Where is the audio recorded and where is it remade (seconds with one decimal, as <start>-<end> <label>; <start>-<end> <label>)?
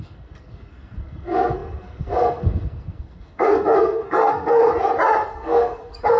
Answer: 0.0-4.6 remade; 4.6-5.3 recorded; 5.3-6.2 remade